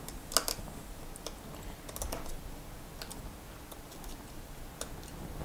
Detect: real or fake real